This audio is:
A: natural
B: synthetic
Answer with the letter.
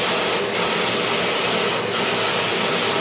A